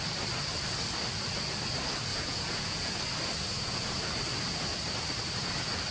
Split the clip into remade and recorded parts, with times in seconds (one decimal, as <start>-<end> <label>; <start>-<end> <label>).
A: 0.0-2.1 recorded; 2.1-3.0 remade; 3.0-3.5 recorded; 3.5-4.0 remade; 4.0-5.9 recorded